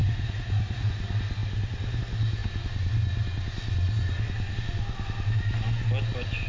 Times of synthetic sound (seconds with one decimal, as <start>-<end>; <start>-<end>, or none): 0.0-0.9